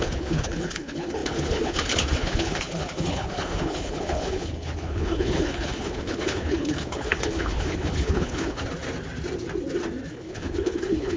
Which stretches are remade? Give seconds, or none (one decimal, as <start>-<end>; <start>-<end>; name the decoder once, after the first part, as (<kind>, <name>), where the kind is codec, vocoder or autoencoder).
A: 0.0-8.6 (codec, HILCodec); 10.1-11.2